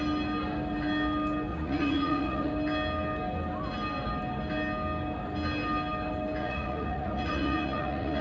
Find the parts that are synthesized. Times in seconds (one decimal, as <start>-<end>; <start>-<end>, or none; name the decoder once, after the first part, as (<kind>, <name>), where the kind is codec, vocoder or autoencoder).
1.5-2.5 (vocoder, Vocos); 6.4-8.2